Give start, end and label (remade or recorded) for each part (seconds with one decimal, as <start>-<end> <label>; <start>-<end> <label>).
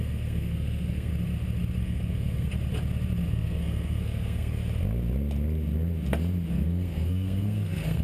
0.0-1.1 remade; 1.1-1.8 recorded; 1.8-2.5 remade; 2.5-3.3 recorded; 3.3-4.6 remade; 4.6-6.5 recorded; 6.5-8.0 remade